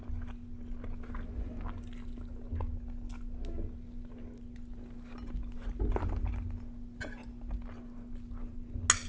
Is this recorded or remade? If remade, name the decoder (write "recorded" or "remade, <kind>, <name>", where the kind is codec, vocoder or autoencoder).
recorded